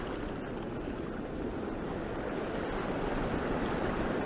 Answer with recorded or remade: recorded